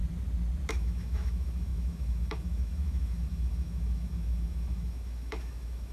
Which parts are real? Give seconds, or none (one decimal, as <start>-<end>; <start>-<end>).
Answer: 0.0-0.7